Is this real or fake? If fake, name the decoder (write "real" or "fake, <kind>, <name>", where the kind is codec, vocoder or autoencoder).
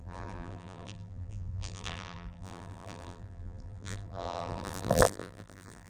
fake, vocoder, BigVGAN v2